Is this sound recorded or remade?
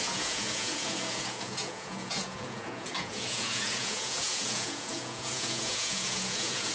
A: remade